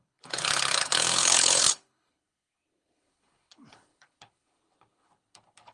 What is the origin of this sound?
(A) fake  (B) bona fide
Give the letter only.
A